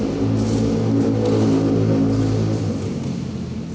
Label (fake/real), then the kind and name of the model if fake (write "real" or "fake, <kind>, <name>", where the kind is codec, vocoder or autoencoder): real